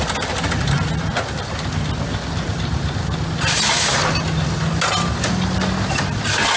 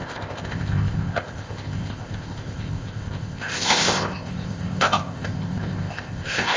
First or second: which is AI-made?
second